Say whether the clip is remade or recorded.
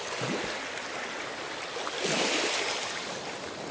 recorded